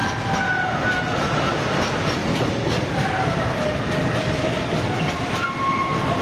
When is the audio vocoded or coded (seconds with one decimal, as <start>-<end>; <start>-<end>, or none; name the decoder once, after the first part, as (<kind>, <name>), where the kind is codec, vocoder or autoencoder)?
none